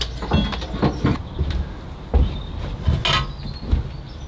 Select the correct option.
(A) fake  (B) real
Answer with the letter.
B